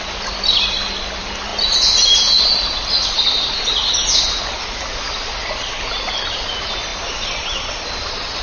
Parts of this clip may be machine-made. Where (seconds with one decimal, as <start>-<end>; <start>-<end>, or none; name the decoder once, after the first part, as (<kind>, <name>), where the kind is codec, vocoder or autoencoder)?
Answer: none